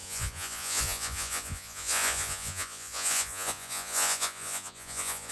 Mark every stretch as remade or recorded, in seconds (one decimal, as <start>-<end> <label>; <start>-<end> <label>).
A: 0.0-5.3 remade

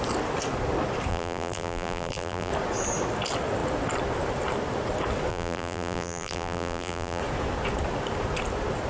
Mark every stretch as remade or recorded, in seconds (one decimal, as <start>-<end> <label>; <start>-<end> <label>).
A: 0.0-1.1 recorded; 1.1-2.5 remade; 2.5-5.3 recorded; 5.3-7.2 remade; 7.2-8.9 recorded

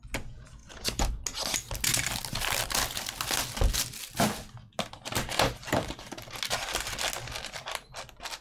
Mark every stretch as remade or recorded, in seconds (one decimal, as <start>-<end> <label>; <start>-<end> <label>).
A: 0.0-8.4 recorded

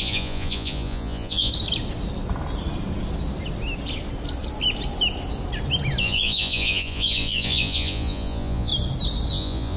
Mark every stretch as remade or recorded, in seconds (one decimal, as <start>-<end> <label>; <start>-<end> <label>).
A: 0.0-1.5 remade; 1.5-6.0 recorded; 6.0-8.7 remade; 8.7-9.3 recorded; 9.3-9.8 remade

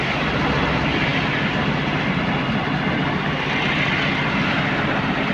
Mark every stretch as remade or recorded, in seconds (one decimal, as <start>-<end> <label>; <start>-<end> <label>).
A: 0.0-5.3 recorded

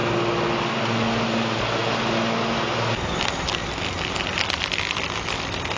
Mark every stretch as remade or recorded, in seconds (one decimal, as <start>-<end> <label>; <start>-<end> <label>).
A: 0.0-5.8 recorded

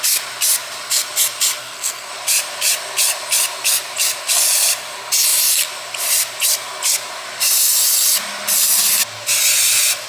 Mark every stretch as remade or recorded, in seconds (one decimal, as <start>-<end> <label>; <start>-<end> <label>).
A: 0.0-1.6 recorded; 1.6-2.1 remade; 2.1-10.1 recorded

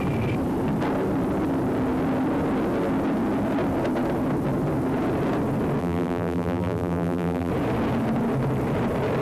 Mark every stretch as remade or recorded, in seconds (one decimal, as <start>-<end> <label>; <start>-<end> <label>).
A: 0.0-5.8 recorded; 5.8-7.5 remade; 7.5-9.2 recorded